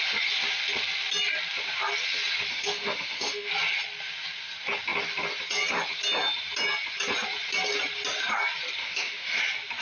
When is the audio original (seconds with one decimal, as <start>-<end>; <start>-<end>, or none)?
0.0-2.5; 3.5-8.8; 9.4-9.8